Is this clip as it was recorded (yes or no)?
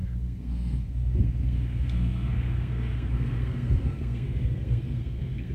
no